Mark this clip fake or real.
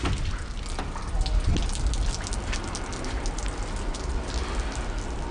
real